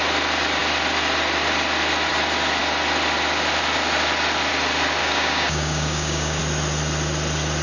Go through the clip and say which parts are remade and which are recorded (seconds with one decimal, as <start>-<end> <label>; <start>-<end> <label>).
0.0-5.0 recorded; 5.0-6.4 remade; 6.4-7.6 recorded